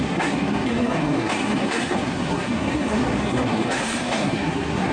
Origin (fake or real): fake